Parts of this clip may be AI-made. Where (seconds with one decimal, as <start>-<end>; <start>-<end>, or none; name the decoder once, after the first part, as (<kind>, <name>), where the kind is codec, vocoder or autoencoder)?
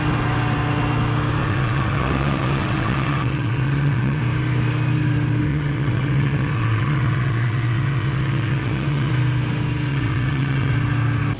1.4-4.2 (vocoder, WaveNeXt); 5.5-9.1; 9.9-10.7